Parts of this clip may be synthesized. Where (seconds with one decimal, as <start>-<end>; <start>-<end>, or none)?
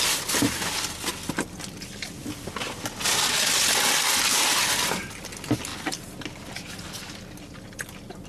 none